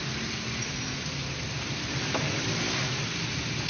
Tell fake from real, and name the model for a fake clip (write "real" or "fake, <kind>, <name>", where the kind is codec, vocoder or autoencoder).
real